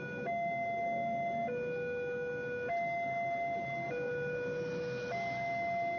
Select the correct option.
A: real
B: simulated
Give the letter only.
A